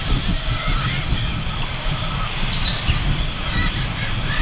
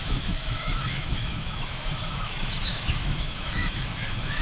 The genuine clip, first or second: first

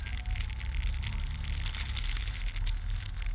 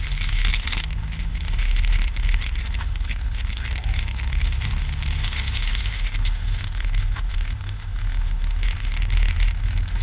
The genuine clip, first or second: first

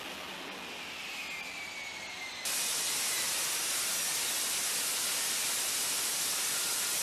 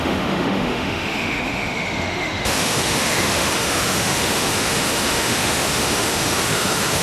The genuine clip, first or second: first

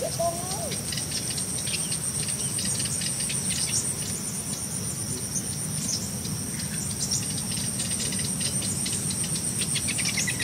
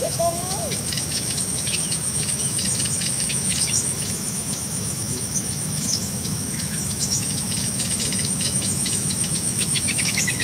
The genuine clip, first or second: first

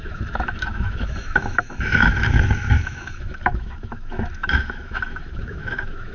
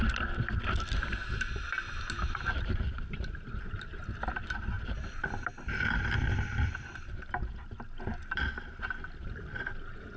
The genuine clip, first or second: second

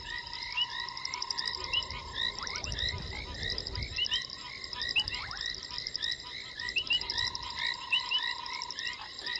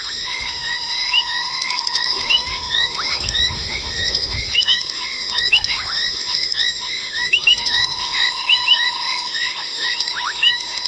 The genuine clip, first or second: first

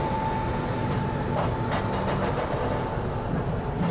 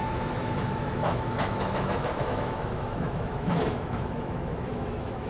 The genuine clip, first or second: first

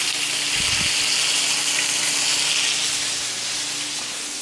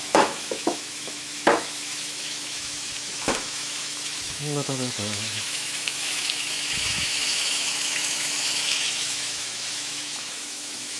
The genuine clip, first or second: first